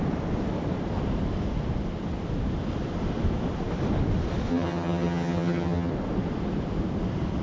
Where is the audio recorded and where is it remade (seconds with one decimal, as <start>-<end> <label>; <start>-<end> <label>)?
0.0-4.5 recorded; 4.5-5.9 remade; 5.9-7.4 recorded